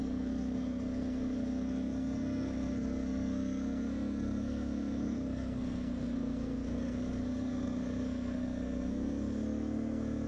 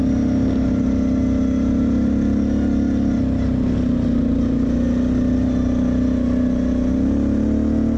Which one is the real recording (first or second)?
second